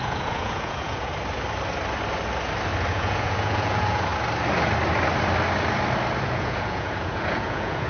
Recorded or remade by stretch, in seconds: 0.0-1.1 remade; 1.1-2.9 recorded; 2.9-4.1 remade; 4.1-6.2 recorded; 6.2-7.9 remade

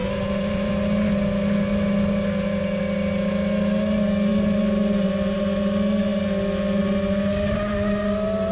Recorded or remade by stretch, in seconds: 0.0-0.7 remade; 0.7-4.3 recorded; 4.3-5.6 remade; 5.6-8.5 recorded

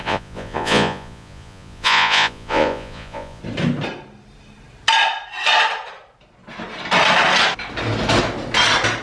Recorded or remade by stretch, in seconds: 0.0-3.4 remade; 3.4-9.0 recorded

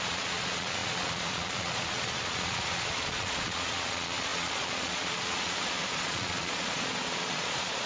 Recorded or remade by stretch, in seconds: 0.0-7.9 remade

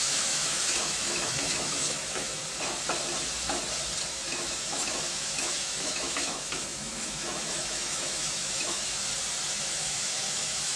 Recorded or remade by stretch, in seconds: 0.0-2.4 remade; 2.4-4.1 recorded; 4.1-9.1 remade; 9.1-9.6 recorded; 9.6-10.8 remade